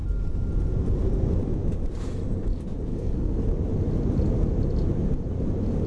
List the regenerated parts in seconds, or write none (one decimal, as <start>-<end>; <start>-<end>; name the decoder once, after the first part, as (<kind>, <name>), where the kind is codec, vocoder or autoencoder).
2.9-3.4 (codec, SNAC)